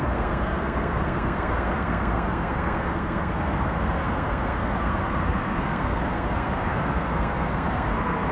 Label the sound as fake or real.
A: fake